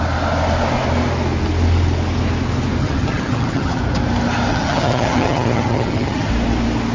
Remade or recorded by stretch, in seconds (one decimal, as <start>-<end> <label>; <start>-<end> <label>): 0.0-2.8 recorded; 2.8-3.8 remade; 3.8-4.5 recorded; 4.5-6.3 remade; 6.3-6.9 recorded